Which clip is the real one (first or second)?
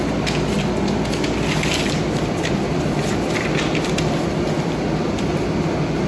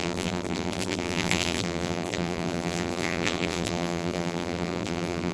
first